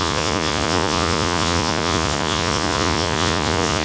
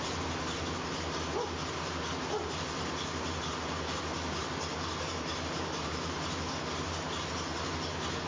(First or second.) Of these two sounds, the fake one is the first